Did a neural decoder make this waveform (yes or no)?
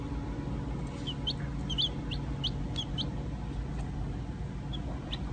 no